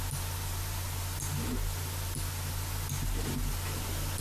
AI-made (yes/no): no